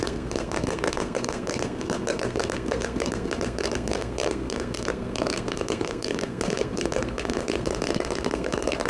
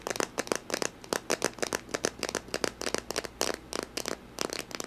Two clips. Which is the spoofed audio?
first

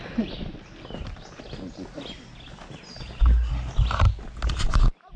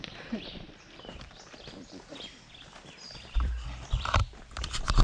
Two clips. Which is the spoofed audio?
second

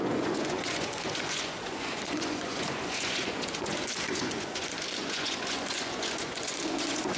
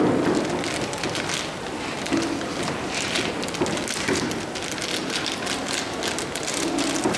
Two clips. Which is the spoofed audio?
first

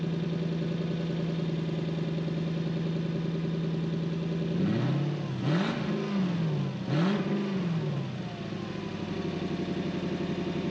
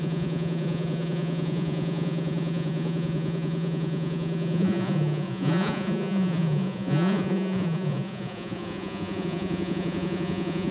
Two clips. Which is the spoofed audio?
second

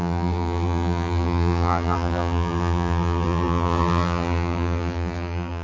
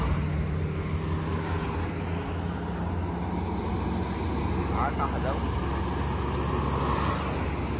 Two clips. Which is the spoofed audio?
first